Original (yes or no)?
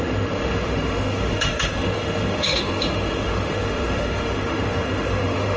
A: no